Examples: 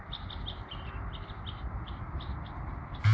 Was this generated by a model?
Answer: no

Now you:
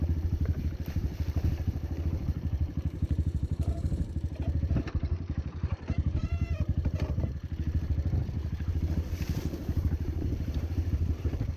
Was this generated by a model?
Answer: yes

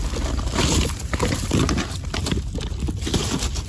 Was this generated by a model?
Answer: no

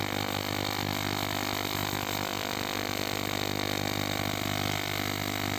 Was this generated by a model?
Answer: no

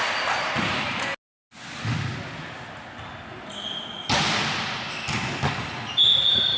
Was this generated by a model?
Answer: no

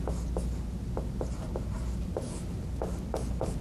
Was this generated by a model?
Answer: no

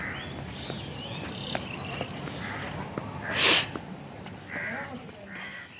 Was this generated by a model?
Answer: no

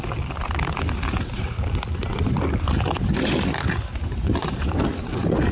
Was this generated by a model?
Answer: no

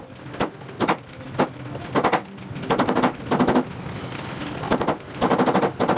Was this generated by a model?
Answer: no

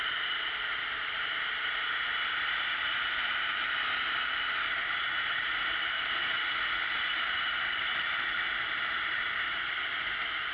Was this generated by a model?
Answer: no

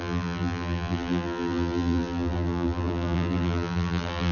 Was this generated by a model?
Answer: yes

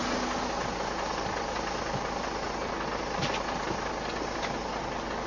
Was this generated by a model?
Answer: no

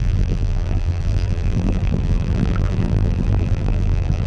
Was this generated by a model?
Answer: yes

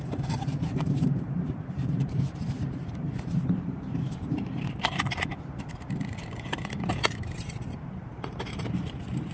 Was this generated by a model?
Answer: yes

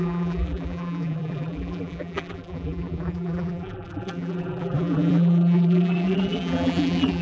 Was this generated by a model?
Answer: yes